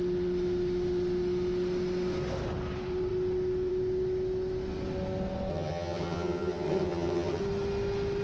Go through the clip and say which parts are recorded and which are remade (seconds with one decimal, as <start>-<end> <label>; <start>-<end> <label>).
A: 0.0-5.5 recorded; 5.5-7.4 remade; 7.4-8.2 recorded